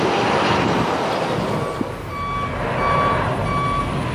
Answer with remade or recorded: recorded